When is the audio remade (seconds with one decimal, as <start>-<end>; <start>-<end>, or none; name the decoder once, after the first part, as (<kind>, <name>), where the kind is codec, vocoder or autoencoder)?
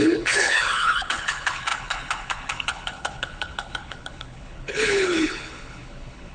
0.0-6.3 (codec, HILCodec)